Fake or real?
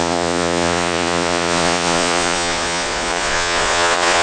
fake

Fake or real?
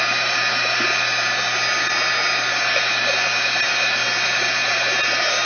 real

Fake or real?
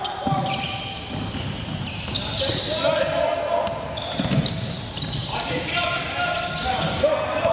real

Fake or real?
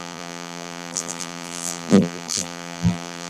fake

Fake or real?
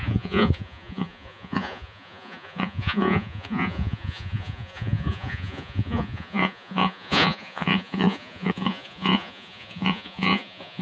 fake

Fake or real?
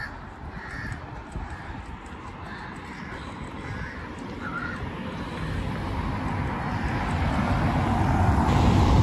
real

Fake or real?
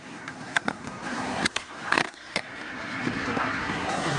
fake